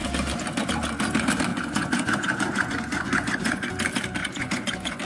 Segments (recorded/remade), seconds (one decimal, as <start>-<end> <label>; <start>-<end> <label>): 0.0-1.5 recorded; 1.5-3.7 remade; 3.7-4.2 recorded; 4.2-5.0 remade